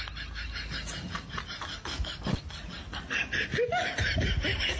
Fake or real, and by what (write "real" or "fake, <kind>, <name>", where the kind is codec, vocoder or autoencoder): real